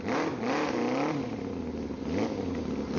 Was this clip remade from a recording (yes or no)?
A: no